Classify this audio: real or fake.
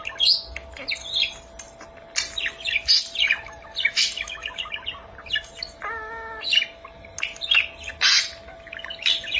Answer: real